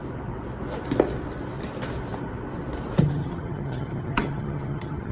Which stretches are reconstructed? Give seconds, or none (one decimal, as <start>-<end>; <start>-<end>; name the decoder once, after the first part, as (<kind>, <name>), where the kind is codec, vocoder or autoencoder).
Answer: 3.0-5.1 (vocoder, HiFi-GAN)